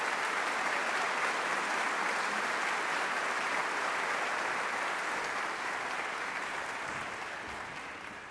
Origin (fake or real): real